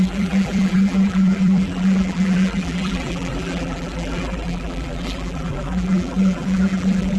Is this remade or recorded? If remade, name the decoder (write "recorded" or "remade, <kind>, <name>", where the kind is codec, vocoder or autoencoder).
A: remade, vocoder, BigVGAN v2